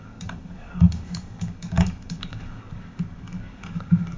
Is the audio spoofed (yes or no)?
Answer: yes